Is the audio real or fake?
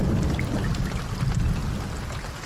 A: real